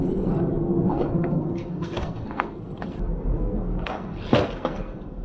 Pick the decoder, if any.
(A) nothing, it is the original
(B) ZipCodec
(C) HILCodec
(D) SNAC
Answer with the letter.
D